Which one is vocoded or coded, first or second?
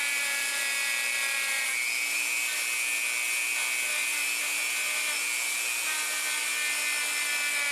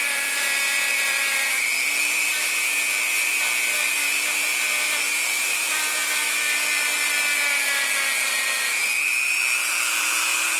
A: second